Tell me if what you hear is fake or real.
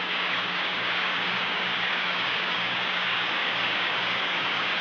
fake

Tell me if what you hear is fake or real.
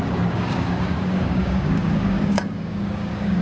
fake